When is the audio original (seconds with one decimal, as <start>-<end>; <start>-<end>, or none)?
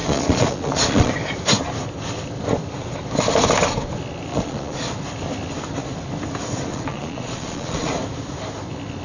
1.1-4.3; 4.9-6.7; 7.9-9.0